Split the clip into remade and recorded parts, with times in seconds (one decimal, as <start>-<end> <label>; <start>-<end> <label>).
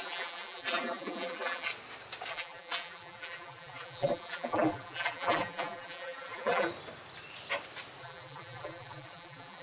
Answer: 0.0-1.7 remade; 1.7-2.3 recorded; 2.3-6.7 remade; 6.7-8.0 recorded; 8.0-9.6 remade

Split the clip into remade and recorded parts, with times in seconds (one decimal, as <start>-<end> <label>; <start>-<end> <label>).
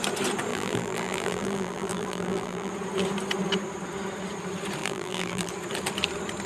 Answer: 0.0-0.5 recorded; 0.5-2.7 remade; 2.7-4.8 recorded; 4.8-5.5 remade; 5.5-6.5 recorded